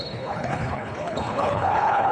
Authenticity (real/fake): fake